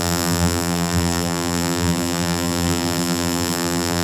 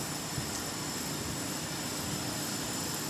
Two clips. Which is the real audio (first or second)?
second